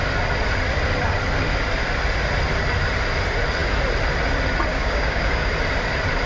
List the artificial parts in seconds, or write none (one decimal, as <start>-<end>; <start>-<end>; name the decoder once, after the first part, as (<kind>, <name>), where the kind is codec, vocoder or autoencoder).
4.7-5.5 (codec, DAC)